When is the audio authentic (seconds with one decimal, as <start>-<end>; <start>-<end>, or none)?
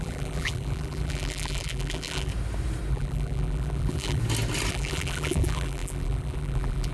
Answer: 2.3-2.9; 4.2-4.7